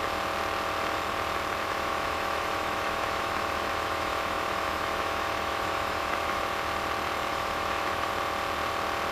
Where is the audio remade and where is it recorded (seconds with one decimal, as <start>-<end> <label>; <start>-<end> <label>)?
0.0-1.6 recorded; 1.6-6.4 remade; 6.4-7.3 recorded; 7.3-8.1 remade; 8.1-9.1 recorded